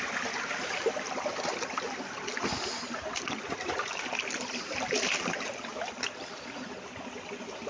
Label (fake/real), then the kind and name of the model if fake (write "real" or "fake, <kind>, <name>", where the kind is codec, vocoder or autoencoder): real